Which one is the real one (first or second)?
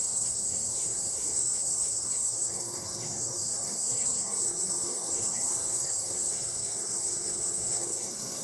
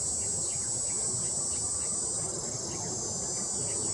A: second